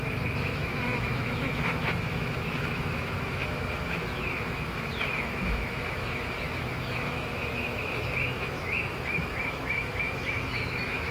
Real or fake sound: fake